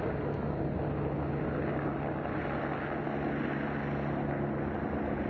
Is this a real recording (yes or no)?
yes